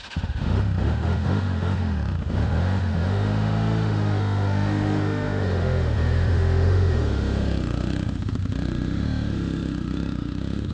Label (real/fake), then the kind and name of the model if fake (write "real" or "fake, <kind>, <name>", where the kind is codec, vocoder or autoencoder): fake, autoencoder, DAC-VAE